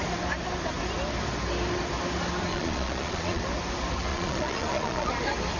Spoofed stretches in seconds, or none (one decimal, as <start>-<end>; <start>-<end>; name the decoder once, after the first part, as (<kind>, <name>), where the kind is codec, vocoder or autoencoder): 2.5-3.4 (vocoder, Vocos); 4.1-5.1